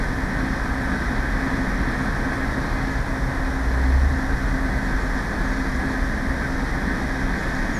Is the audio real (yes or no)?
yes